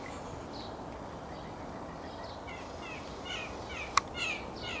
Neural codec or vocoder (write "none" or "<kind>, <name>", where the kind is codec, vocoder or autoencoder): none